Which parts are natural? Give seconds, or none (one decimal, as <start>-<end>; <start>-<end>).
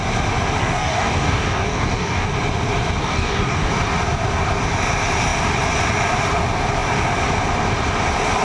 0.0-0.6; 2.3-3.0; 3.7-8.4